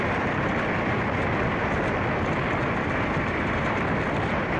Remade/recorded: recorded